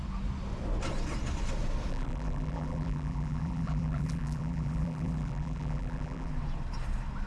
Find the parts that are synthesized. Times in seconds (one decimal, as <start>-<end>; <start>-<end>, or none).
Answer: 1.9-6.3